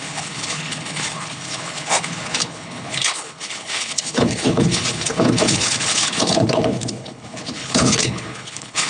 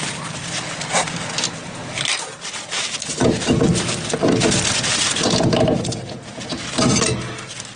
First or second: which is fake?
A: first